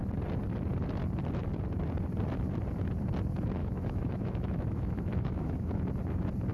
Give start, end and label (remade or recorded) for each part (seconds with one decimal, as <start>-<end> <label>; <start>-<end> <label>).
0.0-3.6 recorded; 3.6-5.9 remade; 5.9-6.5 recorded